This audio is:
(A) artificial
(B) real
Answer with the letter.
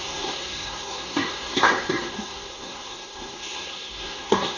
A